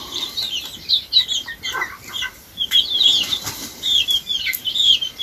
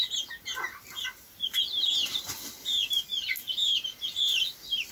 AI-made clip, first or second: first